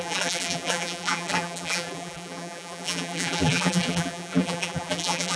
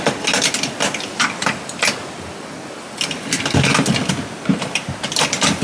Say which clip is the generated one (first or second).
first